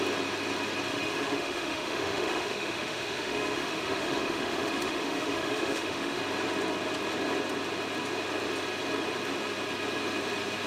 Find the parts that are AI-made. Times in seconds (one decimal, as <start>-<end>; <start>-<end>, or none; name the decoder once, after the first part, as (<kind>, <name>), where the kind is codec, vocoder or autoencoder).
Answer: 0.9-6.2 (autoencoder, DAC-VAE)